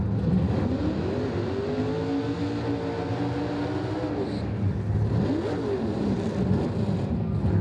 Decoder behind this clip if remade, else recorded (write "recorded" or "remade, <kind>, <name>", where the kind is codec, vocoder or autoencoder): recorded